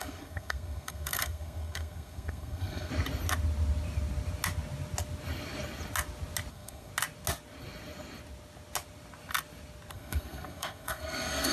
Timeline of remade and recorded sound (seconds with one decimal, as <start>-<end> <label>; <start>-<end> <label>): 0.0-2.9 remade; 2.9-6.5 recorded; 6.5-6.9 remade; 6.9-9.9 recorded; 9.9-11.5 remade